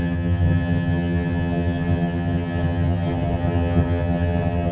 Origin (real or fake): fake